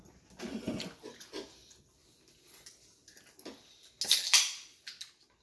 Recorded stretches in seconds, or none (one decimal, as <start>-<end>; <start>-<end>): 0.0-5.4